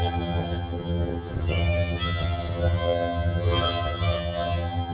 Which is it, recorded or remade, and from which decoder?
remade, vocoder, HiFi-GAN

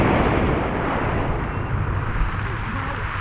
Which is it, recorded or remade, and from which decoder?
recorded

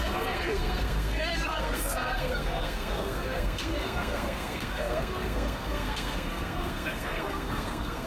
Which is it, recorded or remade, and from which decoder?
remade, codec, SNAC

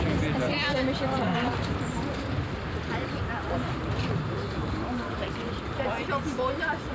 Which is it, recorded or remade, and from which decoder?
recorded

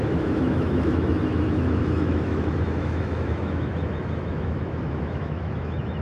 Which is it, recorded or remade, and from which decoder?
remade, autoencoder, DAC-VAE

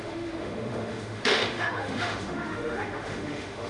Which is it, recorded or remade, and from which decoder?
remade, autoencoder, DAC-VAE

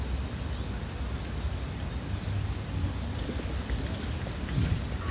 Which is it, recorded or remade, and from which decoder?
recorded